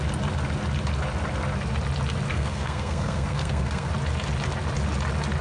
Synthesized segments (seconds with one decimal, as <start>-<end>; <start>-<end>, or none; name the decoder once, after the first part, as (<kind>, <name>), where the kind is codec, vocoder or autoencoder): 2.3-3.9 (codec, SNAC)